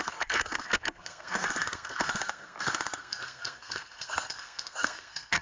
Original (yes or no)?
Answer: no